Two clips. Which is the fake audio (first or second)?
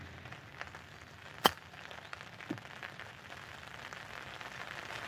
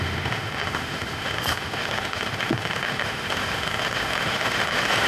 second